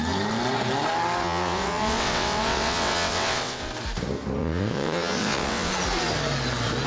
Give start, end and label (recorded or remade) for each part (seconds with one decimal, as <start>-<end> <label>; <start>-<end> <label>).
0.0-1.2 recorded; 1.2-3.7 remade; 3.7-4.4 recorded; 4.4-5.7 remade; 5.7-6.9 recorded